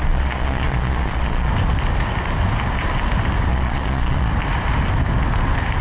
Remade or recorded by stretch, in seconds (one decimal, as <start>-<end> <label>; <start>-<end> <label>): 0.0-1.5 remade; 1.5-3.5 recorded; 3.5-4.3 remade; 4.3-5.8 recorded